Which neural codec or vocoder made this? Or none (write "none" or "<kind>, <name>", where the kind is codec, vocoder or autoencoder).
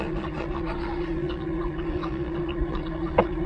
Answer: vocoder, Vocos